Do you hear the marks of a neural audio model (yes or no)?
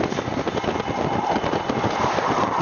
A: no